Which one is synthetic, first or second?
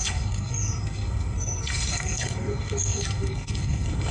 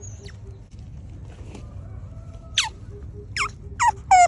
first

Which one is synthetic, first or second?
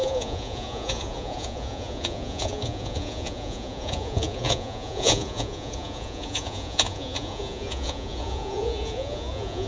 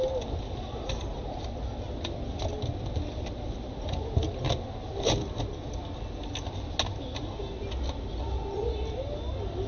first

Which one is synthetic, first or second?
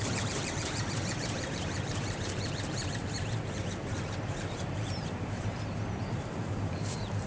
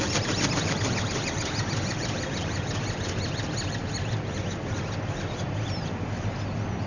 first